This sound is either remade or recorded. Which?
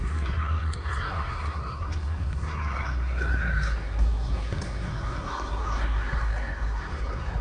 remade